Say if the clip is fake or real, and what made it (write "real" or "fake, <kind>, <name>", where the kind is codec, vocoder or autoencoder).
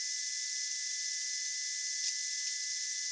real